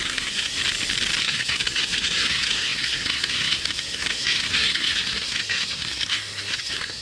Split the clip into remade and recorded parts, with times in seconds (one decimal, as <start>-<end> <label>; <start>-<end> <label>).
0.0-0.6 remade; 0.6-1.2 recorded; 1.2-7.0 remade